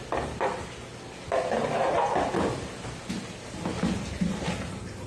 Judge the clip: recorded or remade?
recorded